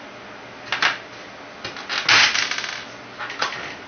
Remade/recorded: recorded